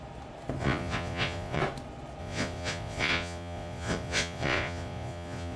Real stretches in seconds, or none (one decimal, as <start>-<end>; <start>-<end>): 0.0-0.6; 1.6-2.2

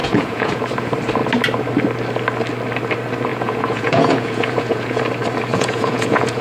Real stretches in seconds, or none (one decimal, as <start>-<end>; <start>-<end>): 0.6-3.3; 5.0-5.5

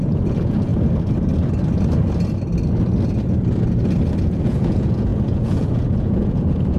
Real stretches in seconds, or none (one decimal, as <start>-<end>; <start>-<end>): 0.7-4.2

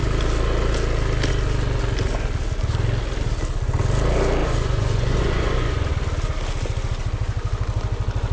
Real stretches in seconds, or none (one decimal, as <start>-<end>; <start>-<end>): 0.0-4.4; 5.9-8.3

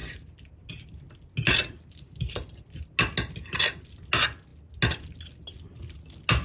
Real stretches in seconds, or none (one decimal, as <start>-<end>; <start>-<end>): 0.0-6.4